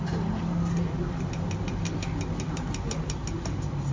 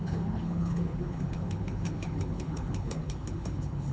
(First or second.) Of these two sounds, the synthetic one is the second